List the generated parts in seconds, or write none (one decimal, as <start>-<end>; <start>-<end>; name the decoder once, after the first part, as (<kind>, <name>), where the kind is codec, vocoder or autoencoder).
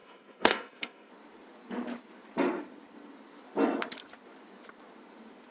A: 0.0-1.1 (codec, SNAC)